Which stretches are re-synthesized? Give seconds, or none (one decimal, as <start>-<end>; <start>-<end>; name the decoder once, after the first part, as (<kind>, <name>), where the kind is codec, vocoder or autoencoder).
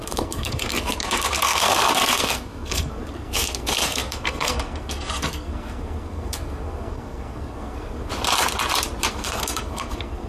0.0-8.1 (codec, SNAC); 9.1-10.3